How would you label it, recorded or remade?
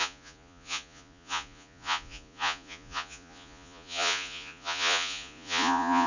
remade